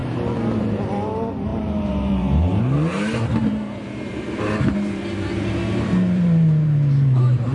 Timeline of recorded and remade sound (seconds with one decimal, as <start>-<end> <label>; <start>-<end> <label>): 0.0-0.6 recorded; 0.6-7.5 remade